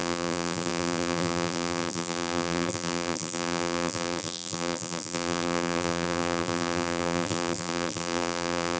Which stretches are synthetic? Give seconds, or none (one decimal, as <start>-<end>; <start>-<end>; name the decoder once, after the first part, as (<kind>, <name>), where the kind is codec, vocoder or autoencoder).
0.0-8.8 (vocoder, BigVGAN v2)

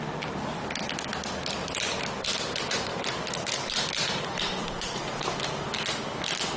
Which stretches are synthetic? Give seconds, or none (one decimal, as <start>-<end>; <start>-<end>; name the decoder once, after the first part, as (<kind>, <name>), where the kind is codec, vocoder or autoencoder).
1.6-5.6 (vocoder, BigVGAN v2)

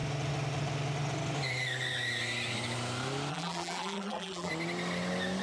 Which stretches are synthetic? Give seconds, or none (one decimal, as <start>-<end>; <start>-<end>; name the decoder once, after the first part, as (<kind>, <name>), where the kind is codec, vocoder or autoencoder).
3.3-4.5 (vocoder, BigVGAN v2)

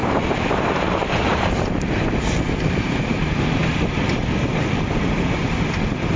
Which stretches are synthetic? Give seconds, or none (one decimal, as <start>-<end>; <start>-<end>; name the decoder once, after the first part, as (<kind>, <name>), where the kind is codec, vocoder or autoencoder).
0.0-3.4 (vocoder, BigVGAN v2); 4.4-5.4

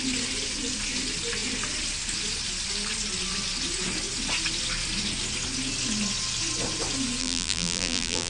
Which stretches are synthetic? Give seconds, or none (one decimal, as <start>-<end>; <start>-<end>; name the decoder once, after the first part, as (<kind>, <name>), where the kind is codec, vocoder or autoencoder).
7.2-8.3 (vocoder, BigVGAN v2)

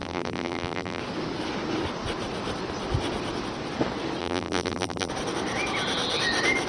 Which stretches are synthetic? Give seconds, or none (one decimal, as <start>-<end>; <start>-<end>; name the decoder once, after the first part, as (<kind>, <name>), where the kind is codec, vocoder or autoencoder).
0.0-1.0 (vocoder, BigVGAN v2); 4.2-5.1

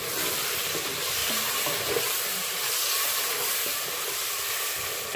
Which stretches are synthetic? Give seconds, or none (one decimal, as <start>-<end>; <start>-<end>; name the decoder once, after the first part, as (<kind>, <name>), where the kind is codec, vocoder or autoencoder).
1.2-4.3 (vocoder, BigVGAN v2)

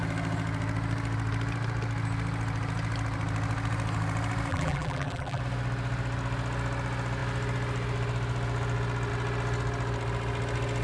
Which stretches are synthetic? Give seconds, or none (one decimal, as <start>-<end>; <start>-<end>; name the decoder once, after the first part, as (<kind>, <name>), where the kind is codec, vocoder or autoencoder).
4.5-5.4 (vocoder, BigVGAN v2)